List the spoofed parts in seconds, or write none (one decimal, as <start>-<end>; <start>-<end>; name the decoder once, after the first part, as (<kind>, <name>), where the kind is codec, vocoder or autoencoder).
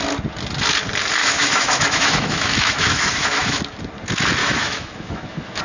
1.2-3.6 (autoencoder, DAC-VAE); 4.4-5.6